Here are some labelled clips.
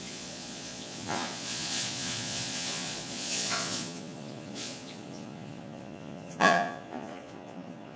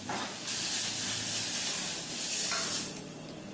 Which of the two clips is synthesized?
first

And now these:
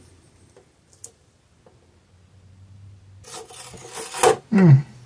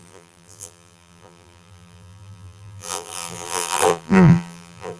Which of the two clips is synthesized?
second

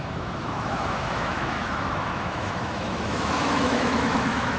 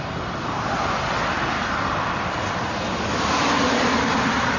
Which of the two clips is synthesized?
first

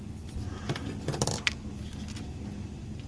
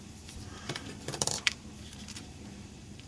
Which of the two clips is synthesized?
second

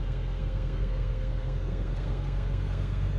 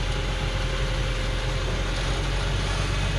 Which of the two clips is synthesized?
first